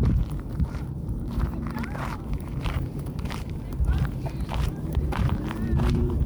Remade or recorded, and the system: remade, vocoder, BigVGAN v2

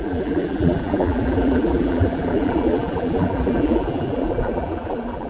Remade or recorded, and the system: remade, vocoder, BigVGAN v2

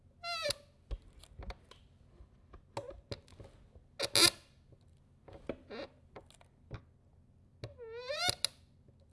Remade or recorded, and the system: recorded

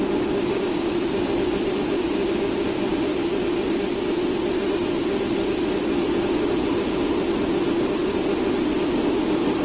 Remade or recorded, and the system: recorded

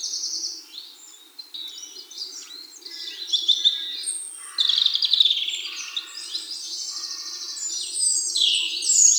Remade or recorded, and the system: recorded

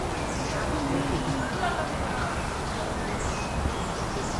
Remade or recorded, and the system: recorded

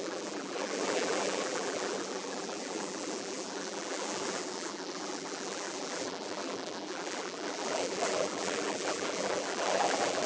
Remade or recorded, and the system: remade, vocoder, BigVGAN v2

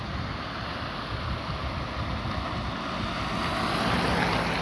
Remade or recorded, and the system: recorded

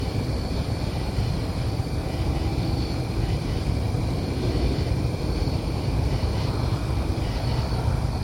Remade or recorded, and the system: remade, vocoder, BigVGAN v2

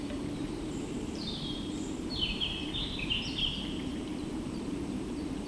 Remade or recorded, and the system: remade, vocoder, BigVGAN v2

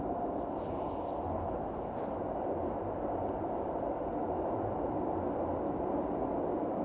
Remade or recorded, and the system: recorded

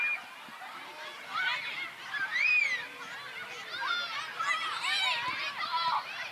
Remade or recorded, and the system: recorded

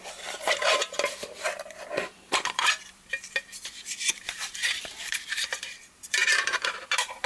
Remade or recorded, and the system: remade, vocoder, BigVGAN v2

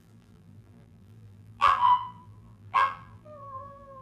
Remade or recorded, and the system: remade, vocoder, BigVGAN v2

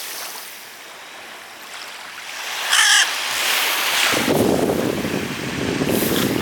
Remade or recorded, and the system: remade, vocoder, BigVGAN v2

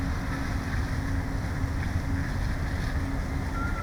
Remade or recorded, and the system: recorded